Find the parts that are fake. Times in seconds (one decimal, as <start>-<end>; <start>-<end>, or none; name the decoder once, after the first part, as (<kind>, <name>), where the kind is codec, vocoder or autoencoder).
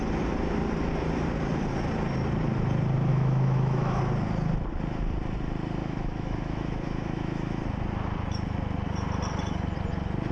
3.1-4.0 (autoencoder, DAC-VAE); 5.8-7.6